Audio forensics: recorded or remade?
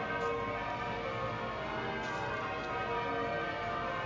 recorded